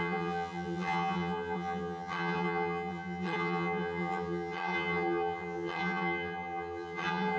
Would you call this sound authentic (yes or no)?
no